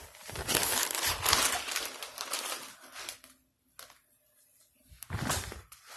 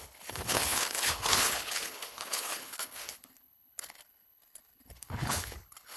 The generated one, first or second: second